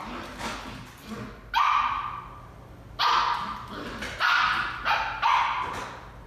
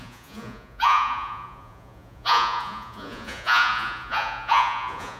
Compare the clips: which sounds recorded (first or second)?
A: first